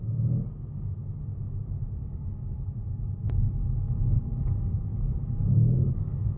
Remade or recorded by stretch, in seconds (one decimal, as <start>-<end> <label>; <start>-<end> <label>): 0.0-1.0 recorded; 1.0-4.1 remade; 4.1-4.9 recorded; 4.9-6.4 remade